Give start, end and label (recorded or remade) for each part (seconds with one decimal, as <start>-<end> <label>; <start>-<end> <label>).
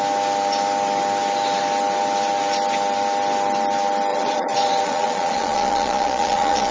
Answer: 0.0-4.1 recorded; 4.1-6.7 remade